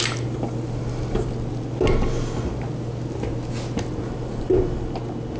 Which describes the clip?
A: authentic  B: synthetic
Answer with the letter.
A